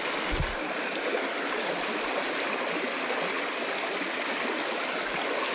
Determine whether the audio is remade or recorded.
recorded